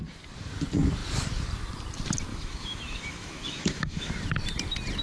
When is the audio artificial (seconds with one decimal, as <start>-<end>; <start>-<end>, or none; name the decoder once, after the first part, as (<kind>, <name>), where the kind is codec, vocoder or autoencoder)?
2.3-4.1 (autoencoder, DAC-VAE)